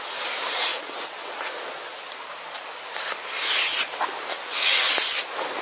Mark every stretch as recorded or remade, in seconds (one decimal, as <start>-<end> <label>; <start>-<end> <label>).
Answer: 0.0-0.7 recorded; 0.7-1.3 remade; 1.3-4.3 recorded; 4.3-4.9 remade; 4.9-5.6 recorded